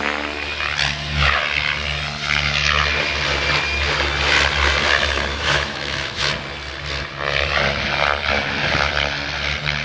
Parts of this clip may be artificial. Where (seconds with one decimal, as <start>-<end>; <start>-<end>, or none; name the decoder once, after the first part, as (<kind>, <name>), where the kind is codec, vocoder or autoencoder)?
5.3-6.3 (autoencoder, DAC-VAE)